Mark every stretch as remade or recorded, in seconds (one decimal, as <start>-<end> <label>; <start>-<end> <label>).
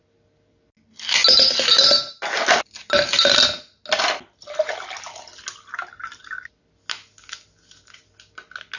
0.0-8.8 recorded